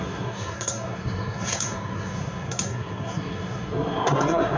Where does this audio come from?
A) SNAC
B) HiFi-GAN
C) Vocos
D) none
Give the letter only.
A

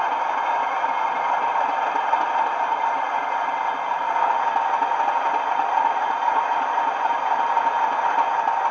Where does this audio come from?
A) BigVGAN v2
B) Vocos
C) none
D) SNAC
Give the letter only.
C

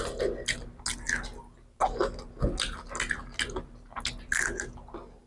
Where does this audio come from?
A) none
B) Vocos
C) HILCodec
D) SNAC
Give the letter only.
A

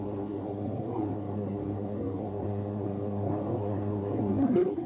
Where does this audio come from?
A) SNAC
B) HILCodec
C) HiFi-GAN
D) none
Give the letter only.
A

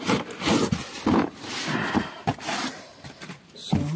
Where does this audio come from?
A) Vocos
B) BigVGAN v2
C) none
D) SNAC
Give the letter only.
C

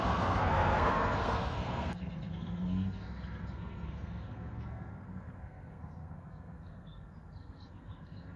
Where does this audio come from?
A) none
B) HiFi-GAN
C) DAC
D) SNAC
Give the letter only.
D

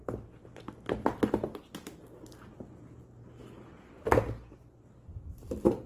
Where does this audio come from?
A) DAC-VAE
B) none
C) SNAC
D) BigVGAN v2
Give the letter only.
B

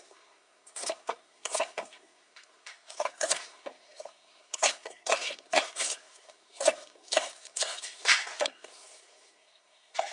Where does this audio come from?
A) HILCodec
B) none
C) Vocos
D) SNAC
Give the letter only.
D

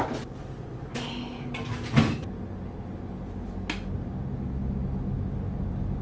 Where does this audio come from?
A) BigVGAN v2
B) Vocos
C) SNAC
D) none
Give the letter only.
D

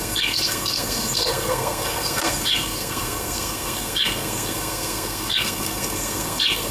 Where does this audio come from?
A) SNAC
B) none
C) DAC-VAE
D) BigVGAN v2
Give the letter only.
A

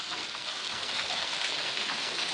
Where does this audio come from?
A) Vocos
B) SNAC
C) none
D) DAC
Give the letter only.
B